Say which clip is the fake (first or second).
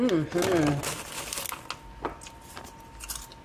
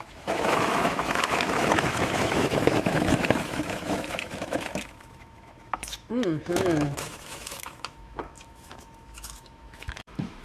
second